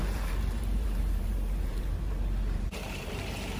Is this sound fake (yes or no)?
yes